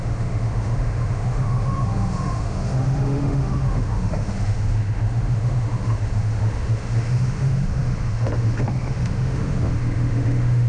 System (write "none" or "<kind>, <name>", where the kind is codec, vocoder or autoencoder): autoencoder, DAC-VAE